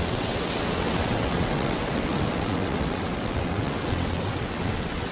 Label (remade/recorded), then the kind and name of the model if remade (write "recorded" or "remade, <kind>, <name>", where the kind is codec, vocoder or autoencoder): remade, vocoder, WaveNeXt